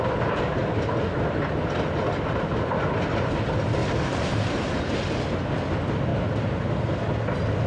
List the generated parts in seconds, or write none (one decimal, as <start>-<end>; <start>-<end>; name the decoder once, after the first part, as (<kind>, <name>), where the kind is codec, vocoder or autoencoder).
0.6-1.3 (vocoder, BigVGAN v2); 3.8-4.8; 6.1-6.7